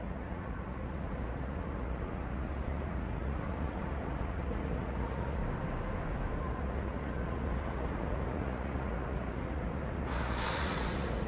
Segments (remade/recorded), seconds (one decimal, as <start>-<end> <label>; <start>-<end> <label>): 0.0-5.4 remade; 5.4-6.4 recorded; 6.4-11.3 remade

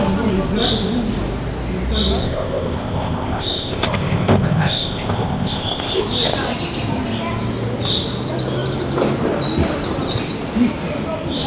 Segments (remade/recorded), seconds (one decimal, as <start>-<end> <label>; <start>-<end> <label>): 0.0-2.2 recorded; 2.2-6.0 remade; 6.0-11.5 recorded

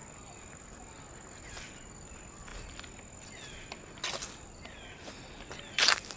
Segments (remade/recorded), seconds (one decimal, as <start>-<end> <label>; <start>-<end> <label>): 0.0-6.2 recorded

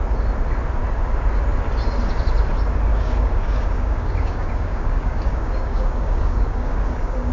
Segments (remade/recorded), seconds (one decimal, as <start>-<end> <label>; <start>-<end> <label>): 0.0-2.9 recorded; 2.9-7.3 remade

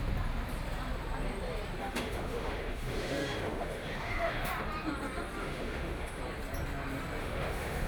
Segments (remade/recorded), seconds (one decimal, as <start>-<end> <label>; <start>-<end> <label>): 0.0-1.8 recorded; 1.8-4.5 remade; 4.5-5.4 recorded; 5.4-6.2 remade; 6.2-7.2 recorded; 7.2-7.9 remade

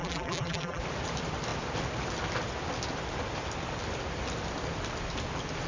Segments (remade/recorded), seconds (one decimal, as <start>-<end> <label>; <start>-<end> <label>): 0.0-0.8 remade; 0.8-5.7 recorded

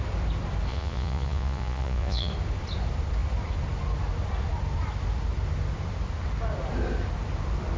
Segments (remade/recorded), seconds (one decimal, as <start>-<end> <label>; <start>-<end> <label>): 0.0-0.7 recorded; 0.7-2.3 remade; 2.3-7.8 recorded